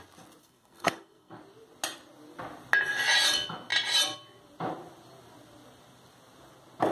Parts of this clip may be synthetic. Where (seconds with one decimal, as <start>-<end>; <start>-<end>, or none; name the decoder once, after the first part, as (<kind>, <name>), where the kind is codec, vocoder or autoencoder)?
0.4-1.4 (codec, SNAC)